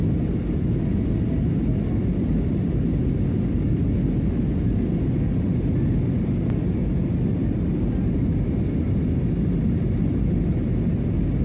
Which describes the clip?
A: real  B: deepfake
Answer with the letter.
A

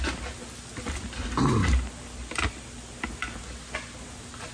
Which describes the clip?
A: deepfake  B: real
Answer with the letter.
B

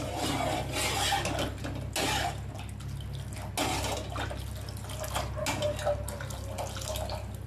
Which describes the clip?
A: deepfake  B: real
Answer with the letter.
B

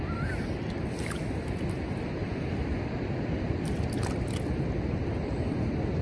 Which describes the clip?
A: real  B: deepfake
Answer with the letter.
A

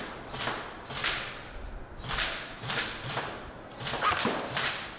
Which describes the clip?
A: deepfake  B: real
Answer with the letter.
B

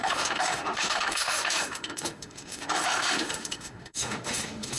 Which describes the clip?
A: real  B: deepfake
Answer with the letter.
B